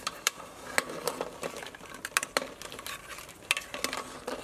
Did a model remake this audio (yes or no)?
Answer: no